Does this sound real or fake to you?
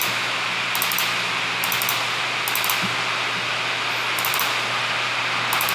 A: real